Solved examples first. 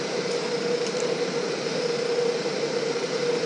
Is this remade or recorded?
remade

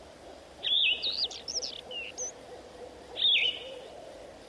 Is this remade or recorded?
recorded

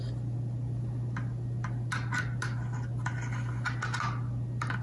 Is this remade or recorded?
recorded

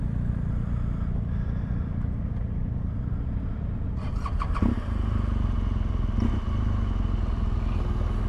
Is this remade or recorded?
recorded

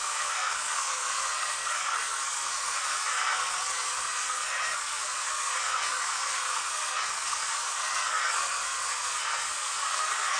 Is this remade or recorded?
remade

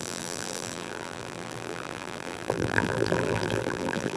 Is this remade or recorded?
remade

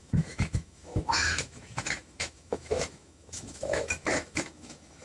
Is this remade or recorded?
remade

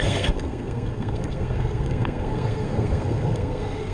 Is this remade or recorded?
remade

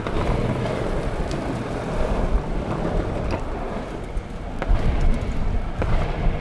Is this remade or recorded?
recorded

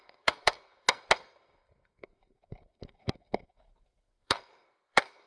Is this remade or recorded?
remade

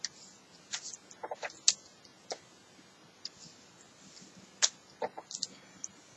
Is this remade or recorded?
recorded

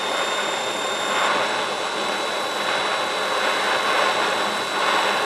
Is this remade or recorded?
recorded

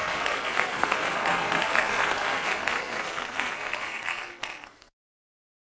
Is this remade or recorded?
remade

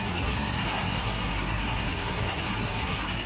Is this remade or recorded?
remade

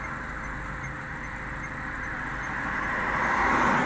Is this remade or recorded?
recorded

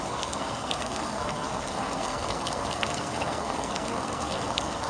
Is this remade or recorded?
remade